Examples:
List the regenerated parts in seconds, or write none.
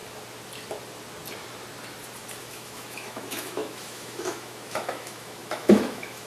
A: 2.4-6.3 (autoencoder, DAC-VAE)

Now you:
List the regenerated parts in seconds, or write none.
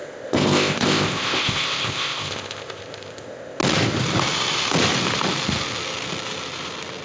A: 0.0-3.6 (codec, ZipCodec)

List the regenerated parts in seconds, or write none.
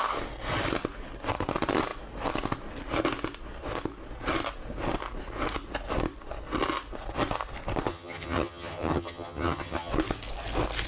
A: 7.9-9.9 (vocoder, HiFi-GAN)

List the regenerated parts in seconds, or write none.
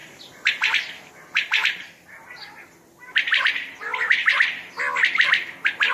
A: 0.0-1.1 (vocoder, BigVGAN v2); 1.6-2.8; 4.2-5.5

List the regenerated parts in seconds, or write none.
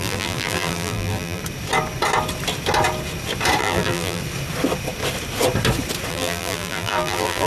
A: 0.0-1.4 (vocoder, BigVGAN v2); 3.6-4.2; 6.1-7.5